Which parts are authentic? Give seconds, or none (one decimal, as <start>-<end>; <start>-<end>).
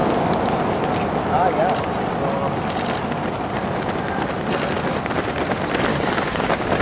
0.0-5.9